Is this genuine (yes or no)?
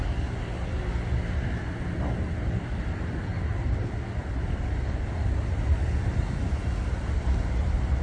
yes